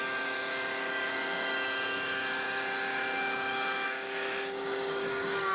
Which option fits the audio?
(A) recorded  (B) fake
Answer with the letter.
B